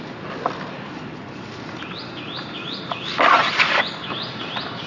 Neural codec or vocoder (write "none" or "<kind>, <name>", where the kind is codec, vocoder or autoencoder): none